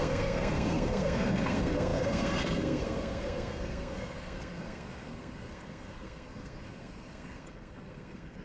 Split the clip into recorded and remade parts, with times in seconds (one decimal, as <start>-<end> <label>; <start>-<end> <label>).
0.0-8.4 remade